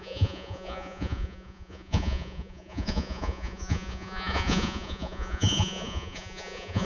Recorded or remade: remade